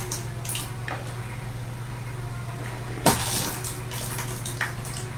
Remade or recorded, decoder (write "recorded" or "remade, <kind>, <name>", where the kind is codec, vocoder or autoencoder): recorded